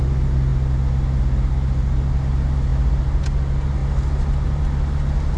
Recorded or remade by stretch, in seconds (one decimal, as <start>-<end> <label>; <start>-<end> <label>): 0.0-5.4 recorded